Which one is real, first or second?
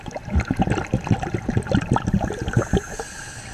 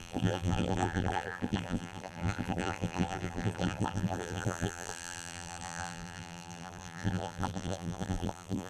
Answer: first